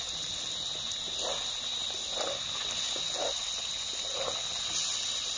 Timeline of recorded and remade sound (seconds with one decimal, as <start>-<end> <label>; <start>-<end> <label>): 0.0-5.4 recorded